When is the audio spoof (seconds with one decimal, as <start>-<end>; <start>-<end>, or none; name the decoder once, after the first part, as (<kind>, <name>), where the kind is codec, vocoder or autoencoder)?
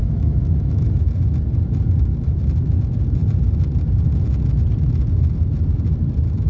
0.0-0.9 (autoencoder, DAC-VAE)